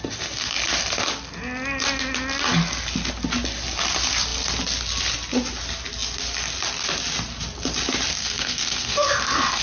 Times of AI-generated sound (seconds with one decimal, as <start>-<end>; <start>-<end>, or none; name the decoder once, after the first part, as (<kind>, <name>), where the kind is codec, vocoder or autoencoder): 8.2-9.6 (codec, SNAC)